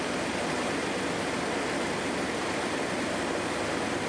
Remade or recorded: recorded